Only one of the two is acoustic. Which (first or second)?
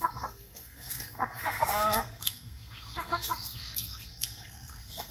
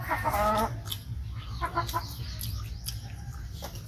second